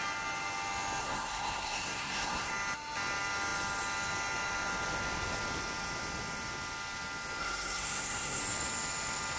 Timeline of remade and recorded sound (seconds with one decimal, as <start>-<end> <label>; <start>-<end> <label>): 0.0-1.0 recorded; 1.0-2.5 remade; 2.5-7.4 recorded; 7.4-8.4 remade; 8.4-9.4 recorded